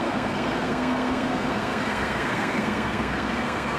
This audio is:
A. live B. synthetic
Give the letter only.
B